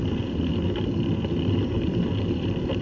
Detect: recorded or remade recorded